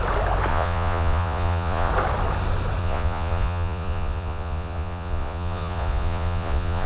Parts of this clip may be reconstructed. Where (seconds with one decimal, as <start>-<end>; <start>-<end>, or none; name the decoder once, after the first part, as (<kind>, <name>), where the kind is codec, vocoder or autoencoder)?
0.5-1.9 (vocoder, Vocos); 2.8-6.9